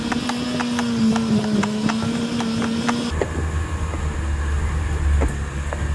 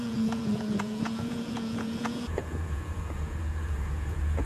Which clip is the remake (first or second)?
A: second